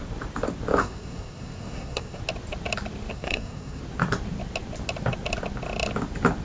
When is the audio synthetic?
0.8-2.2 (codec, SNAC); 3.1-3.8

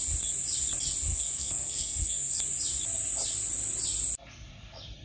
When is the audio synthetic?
1.1-2.4 (codec, SNAC)

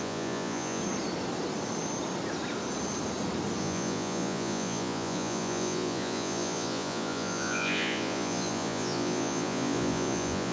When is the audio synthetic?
0.0-0.8 (vocoder, Vocos); 3.6-10.5